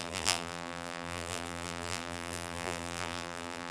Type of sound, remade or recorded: remade